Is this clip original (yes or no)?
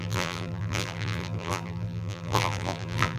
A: no